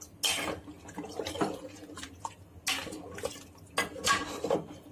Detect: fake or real real